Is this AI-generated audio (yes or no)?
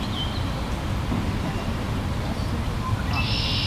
no